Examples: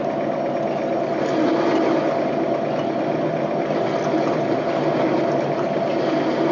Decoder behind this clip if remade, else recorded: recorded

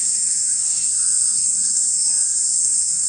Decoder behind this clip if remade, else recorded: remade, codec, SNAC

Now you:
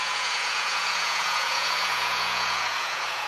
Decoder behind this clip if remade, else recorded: remade, vocoder, Vocos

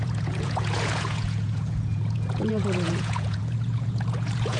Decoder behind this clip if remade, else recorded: remade, vocoder, Vocos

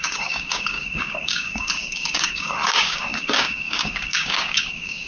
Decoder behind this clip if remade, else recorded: remade, codec, DAC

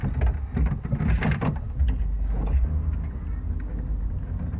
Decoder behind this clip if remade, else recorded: recorded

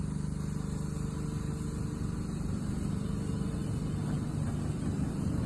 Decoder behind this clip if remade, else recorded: recorded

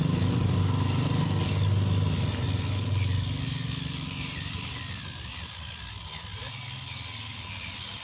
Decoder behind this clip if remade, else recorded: recorded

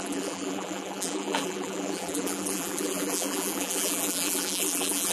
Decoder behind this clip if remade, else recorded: remade, vocoder, BigVGAN v2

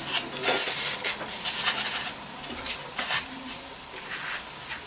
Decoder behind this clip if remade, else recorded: recorded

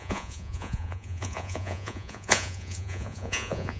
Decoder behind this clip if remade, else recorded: remade, vocoder, Vocos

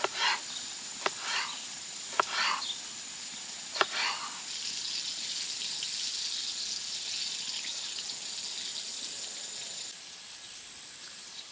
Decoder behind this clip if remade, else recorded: recorded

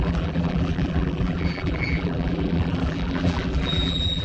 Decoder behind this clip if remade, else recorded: remade, vocoder, BigVGAN v2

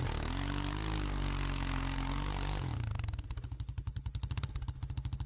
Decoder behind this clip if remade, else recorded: recorded